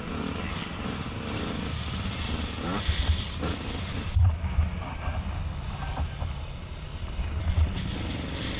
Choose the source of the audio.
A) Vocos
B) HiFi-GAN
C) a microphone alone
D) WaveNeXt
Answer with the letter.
C